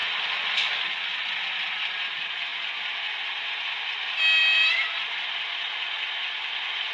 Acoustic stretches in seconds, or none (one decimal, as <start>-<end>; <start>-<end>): 0.0-4.4; 5.2-6.9

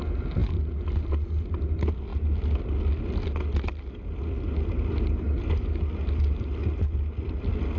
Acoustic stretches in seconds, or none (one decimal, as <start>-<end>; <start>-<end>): 0.0-7.8

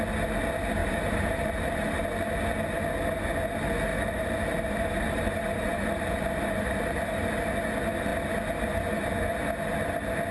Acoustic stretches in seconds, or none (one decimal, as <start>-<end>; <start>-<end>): 0.0-0.8; 2.0-3.9; 7.5-10.3

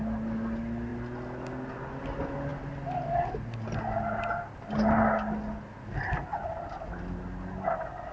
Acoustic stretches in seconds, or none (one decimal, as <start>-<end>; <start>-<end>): 0.0-8.1

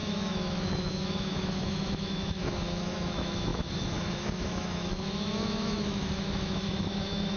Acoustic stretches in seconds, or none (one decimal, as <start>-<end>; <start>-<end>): none

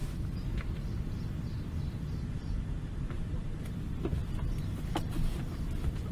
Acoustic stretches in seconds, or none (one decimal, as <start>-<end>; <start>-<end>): 0.0-4.2

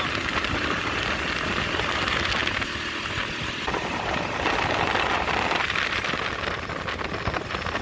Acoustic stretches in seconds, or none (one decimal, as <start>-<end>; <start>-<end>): 0.0-7.8

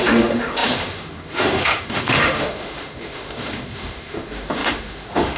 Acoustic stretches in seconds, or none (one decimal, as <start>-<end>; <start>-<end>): none